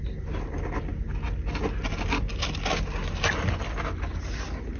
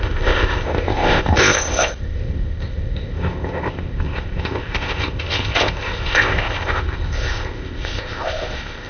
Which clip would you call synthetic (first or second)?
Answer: second